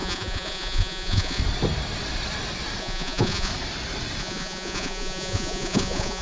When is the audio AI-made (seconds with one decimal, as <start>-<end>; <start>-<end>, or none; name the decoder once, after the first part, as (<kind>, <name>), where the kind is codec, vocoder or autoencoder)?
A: 0.0-1.4 (vocoder, Vocos); 2.8-3.5; 4.2-6.2